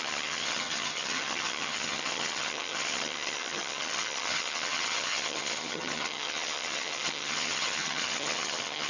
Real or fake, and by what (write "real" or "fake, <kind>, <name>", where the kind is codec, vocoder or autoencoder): fake, vocoder, HiFi-GAN